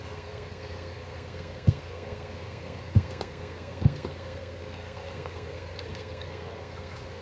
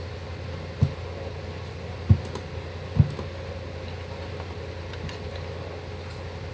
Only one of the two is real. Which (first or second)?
second